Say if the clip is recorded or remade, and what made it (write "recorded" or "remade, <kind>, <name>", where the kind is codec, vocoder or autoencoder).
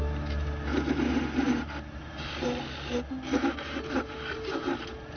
recorded